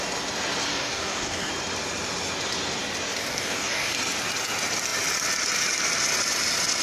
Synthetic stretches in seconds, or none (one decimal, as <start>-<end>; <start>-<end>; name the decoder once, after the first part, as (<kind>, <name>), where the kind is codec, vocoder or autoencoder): 0.7-1.5 (codec, DAC); 3.2-3.9